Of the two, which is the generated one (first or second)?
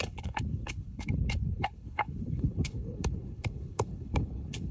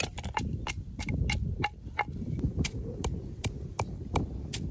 first